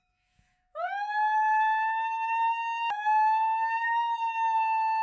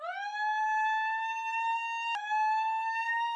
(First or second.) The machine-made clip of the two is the first